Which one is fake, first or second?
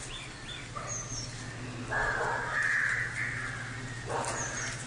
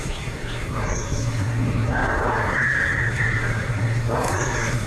second